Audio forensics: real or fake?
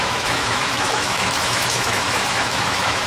fake